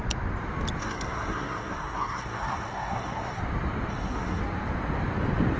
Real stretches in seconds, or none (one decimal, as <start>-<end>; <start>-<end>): 0.0-0.8; 3.4-3.9; 4.4-5.6